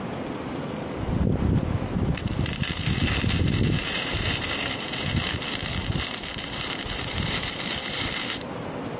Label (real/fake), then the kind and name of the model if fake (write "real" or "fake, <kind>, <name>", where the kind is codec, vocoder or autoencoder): fake, vocoder, BigVGAN v2